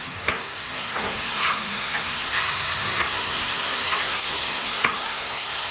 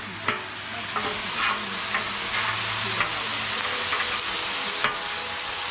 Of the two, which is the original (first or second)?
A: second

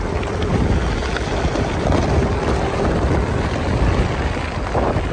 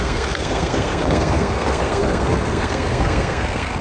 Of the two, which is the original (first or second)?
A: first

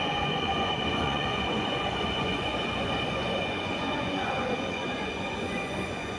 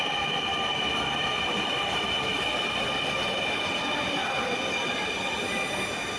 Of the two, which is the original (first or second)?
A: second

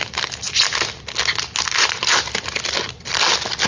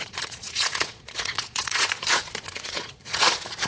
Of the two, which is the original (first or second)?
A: first